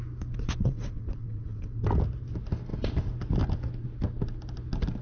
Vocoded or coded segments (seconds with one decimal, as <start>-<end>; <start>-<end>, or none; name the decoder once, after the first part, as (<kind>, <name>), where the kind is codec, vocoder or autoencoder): 0.6-1.8 (vocoder, WaveNeXt)